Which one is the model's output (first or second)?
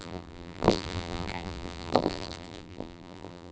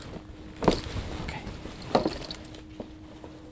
first